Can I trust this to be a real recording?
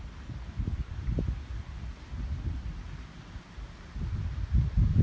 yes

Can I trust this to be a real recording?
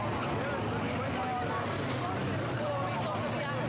yes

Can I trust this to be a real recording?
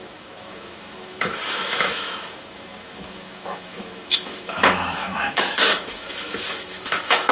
no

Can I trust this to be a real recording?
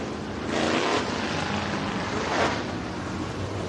yes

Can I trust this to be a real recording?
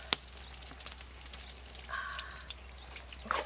yes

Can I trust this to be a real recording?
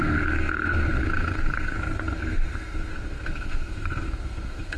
no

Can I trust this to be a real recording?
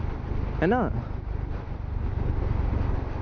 yes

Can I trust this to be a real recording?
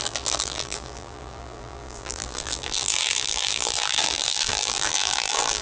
no